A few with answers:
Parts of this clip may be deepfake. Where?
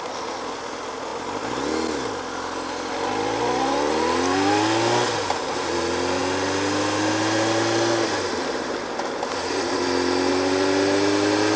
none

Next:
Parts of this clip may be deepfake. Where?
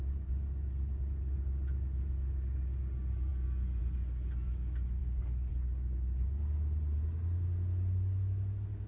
none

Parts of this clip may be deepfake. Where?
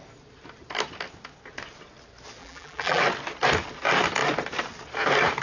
2.4-3.0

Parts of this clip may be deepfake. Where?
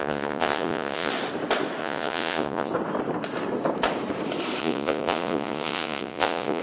0.0-1.1; 1.8-2.7; 4.6-6.6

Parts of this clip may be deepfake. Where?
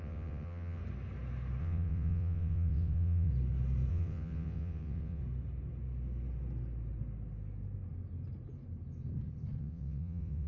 0.0-0.8; 1.6-3.3; 3.9-5.2; 9.6-10.5